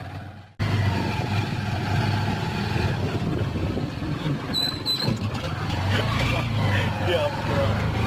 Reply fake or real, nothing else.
real